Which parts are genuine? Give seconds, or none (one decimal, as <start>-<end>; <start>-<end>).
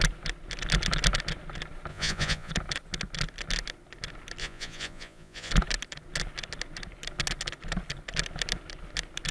0.0-1.9; 2.5-4.4; 5.5-9.3